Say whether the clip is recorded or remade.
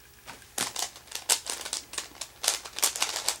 recorded